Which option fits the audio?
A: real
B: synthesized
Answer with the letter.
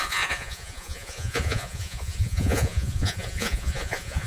B